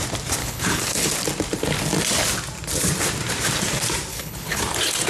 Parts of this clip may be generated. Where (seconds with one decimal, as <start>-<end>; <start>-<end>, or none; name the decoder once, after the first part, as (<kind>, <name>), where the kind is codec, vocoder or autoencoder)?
0.4-1.1 (codec, HILCodec); 4.1-4.6

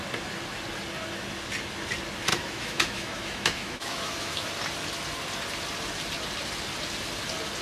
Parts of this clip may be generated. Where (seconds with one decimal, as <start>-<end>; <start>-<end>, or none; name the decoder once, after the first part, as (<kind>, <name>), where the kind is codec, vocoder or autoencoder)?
2.3-4.5 (autoencoder, DAC-VAE)